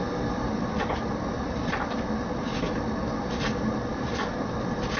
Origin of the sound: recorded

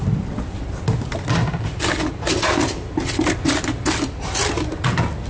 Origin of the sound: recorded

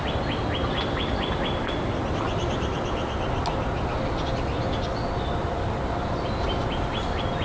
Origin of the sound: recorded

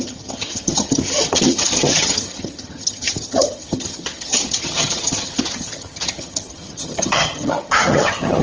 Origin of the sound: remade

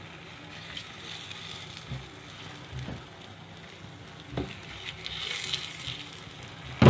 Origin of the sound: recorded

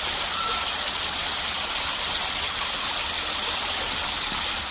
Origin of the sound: recorded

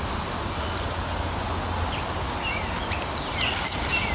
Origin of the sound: recorded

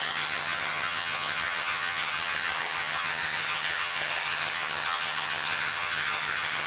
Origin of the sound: remade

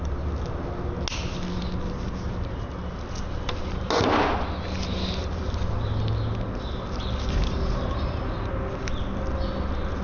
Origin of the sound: recorded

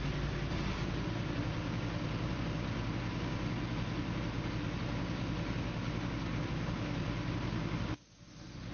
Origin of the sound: recorded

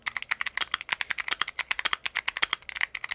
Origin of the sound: recorded